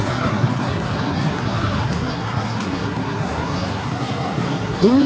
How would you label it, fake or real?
fake